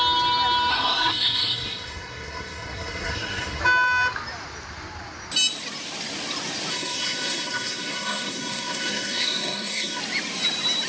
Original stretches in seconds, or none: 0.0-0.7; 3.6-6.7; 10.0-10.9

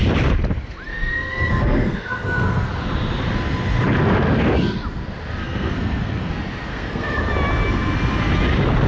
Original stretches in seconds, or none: 0.0-0.9; 2.7-5.4; 6.3-6.7; 7.2-8.9

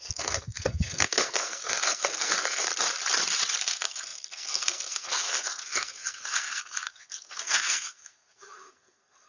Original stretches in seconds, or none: 2.7-3.6

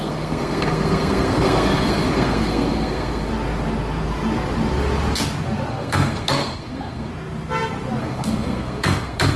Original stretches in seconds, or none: 3.3-5.7; 7.1-8.0

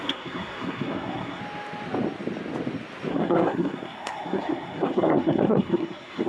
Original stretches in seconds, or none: 1.4-3.1

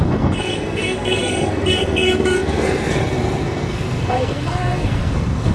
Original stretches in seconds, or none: none